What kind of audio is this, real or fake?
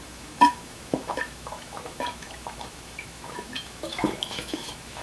fake